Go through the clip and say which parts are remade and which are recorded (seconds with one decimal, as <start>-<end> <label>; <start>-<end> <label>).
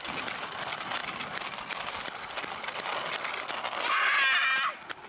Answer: 0.0-5.1 recorded